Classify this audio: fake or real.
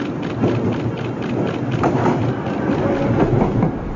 real